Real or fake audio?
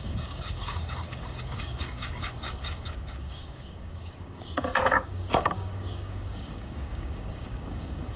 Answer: fake